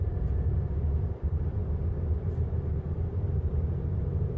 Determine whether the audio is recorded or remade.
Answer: remade